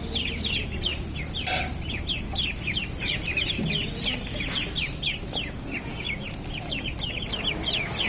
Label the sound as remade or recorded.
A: recorded